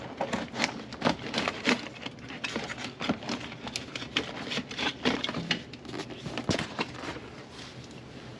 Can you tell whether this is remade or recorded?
recorded